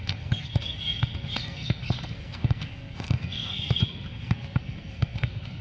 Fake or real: fake